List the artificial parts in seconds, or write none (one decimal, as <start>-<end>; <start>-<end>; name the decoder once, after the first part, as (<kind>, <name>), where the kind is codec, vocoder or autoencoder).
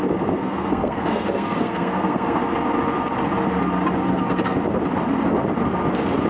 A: 0.4-2.4 (codec, SNAC); 4.0-4.6